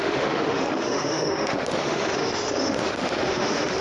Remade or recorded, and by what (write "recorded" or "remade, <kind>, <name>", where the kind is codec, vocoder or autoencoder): remade, autoencoder, DAC-VAE